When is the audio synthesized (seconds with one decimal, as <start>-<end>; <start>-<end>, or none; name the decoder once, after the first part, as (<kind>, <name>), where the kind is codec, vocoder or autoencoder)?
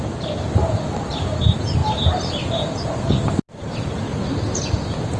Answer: 1.8-3.1 (vocoder, BigVGAN v2); 4.1-4.6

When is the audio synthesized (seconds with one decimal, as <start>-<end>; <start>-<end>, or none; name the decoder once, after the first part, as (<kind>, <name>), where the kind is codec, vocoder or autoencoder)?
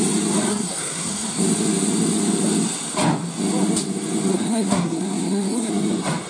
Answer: 0.5-1.4 (codec, SNAC); 4.3-5.7